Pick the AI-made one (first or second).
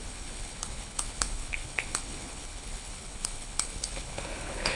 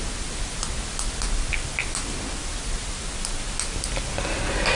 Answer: first